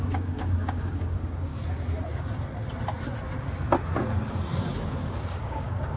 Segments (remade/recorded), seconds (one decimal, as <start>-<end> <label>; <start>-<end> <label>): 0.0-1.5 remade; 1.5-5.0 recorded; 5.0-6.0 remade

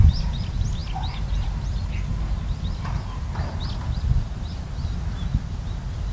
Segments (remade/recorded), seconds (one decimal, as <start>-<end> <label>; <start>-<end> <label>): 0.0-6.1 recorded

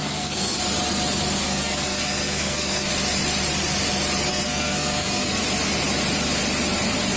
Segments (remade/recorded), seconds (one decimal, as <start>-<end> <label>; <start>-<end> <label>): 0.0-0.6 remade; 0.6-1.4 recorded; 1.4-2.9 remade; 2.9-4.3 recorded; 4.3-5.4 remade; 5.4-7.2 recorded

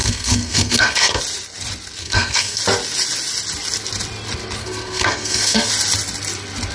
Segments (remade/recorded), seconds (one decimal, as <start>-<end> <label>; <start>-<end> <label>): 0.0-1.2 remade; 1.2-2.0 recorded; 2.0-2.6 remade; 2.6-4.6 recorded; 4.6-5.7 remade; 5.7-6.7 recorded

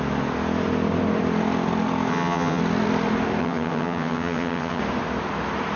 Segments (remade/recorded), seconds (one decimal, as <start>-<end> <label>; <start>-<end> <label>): 0.0-2.1 recorded; 2.1-2.6 remade; 2.6-3.4 recorded; 3.4-4.8 remade; 4.8-5.8 recorded

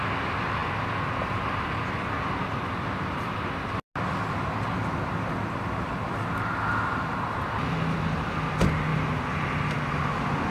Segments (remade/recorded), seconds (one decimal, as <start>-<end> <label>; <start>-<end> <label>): 0.0-10.5 recorded